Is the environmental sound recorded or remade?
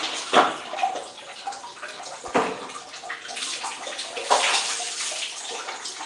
recorded